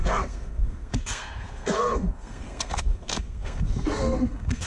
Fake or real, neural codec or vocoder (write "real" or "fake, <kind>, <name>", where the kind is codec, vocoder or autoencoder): fake, codec, SNAC